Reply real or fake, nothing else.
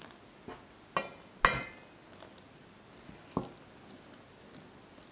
real